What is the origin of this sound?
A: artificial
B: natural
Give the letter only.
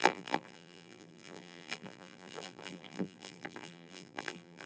A